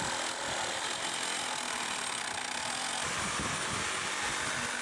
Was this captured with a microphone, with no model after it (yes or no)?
yes